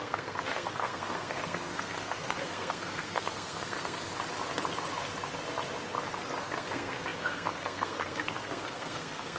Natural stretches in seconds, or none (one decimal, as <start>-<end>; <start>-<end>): 4.1-6.4